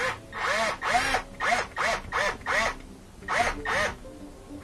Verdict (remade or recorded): recorded